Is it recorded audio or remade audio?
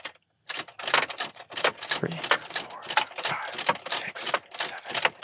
recorded